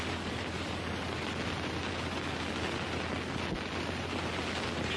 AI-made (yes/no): no